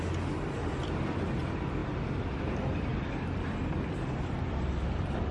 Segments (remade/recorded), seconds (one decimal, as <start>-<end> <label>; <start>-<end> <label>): 0.0-5.3 recorded